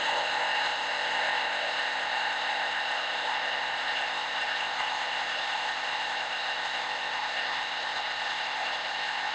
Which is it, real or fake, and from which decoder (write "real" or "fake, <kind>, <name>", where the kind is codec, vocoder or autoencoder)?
fake, codec, ZipCodec